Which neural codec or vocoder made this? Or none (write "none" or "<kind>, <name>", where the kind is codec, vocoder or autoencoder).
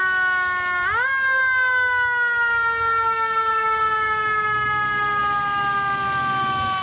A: none